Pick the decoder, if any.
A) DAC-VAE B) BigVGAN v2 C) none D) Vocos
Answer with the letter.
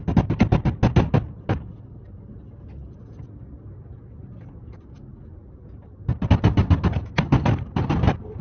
C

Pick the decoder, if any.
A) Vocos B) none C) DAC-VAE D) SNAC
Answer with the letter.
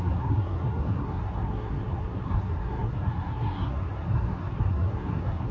D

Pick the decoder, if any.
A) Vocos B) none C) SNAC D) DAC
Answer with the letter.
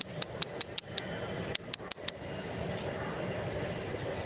B